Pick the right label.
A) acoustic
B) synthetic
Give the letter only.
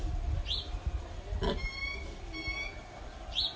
A